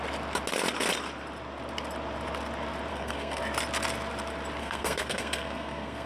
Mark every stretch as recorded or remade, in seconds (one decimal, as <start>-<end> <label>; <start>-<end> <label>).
0.0-2.9 recorded; 2.9-3.4 remade; 3.4-4.6 recorded; 4.6-6.1 remade